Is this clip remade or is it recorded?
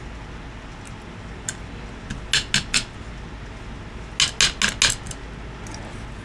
recorded